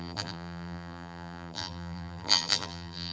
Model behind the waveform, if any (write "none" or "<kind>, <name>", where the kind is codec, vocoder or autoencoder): vocoder, BigVGAN v2